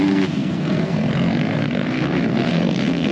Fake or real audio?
fake